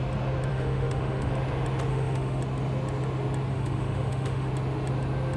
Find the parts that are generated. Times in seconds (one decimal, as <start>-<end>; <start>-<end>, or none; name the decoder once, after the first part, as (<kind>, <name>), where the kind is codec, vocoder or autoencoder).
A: 0.5-1.3 (autoencoder, DAC-VAE); 1.9-2.4; 3.5-4.5